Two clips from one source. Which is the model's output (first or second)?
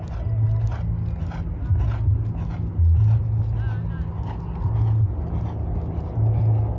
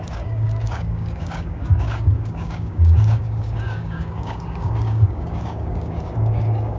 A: second